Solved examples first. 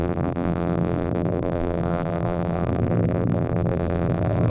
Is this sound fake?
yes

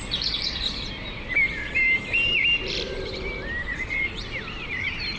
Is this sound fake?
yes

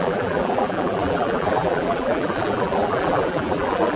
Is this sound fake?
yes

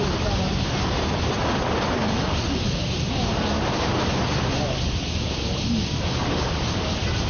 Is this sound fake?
no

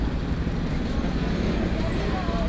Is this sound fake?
no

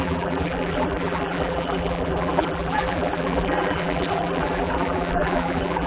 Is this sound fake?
yes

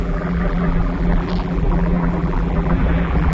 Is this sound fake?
yes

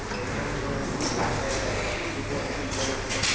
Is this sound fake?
no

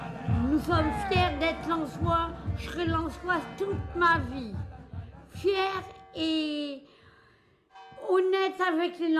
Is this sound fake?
no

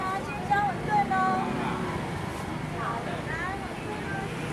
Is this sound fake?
no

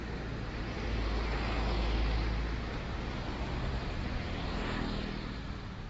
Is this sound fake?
no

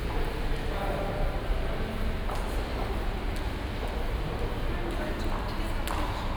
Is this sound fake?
no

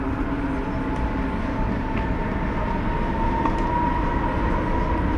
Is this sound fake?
no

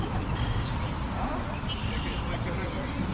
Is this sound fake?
yes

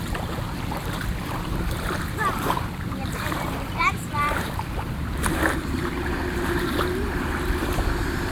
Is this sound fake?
yes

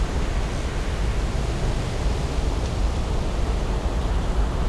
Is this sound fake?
no